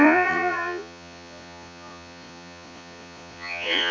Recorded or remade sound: remade